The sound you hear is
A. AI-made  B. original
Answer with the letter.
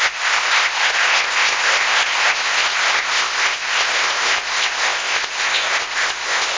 A